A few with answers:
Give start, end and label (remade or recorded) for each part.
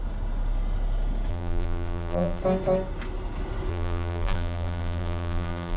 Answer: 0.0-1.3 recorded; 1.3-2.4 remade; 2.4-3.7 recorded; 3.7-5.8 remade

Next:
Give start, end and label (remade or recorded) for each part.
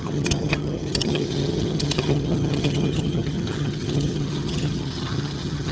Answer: 0.0-5.7 remade